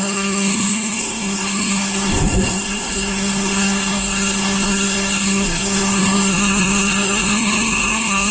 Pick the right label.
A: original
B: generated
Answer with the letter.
B